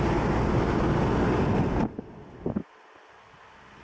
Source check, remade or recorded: recorded